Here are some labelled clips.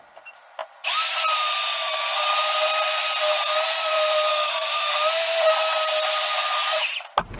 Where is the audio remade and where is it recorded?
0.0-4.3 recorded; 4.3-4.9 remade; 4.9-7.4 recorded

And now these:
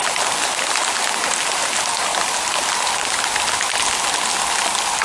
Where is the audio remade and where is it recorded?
0.0-5.0 recorded

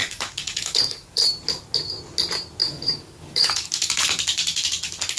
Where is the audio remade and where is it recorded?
0.0-1.2 remade; 1.2-2.6 recorded; 2.6-3.9 remade; 3.9-5.2 recorded

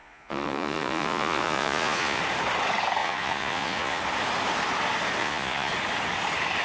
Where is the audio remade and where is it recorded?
0.0-2.2 remade; 2.2-3.0 recorded; 3.0-4.0 remade; 4.0-5.2 recorded; 5.2-5.7 remade; 5.7-6.6 recorded

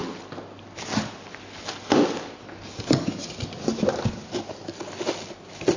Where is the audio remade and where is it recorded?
0.0-5.8 recorded

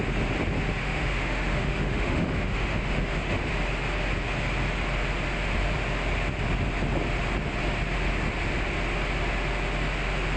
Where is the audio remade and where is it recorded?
0.0-0.8 recorded; 0.8-3.5 remade; 3.5-10.4 recorded

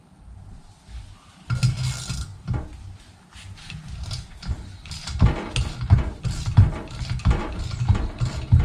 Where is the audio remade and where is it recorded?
0.0-8.6 recorded